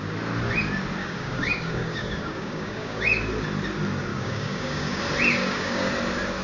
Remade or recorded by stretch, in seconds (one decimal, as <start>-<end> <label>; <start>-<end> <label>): 0.0-1.0 recorded; 1.0-3.1 remade; 3.1-4.1 recorded; 4.1-5.0 remade; 5.0-5.4 recorded; 5.4-5.9 remade; 5.9-6.4 recorded